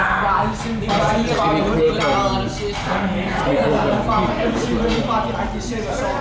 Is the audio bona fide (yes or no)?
yes